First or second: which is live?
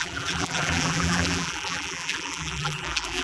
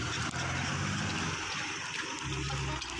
second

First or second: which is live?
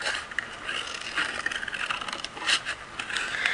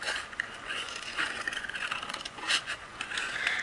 first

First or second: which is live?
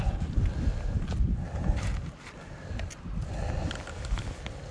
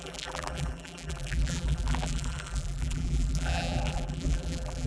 first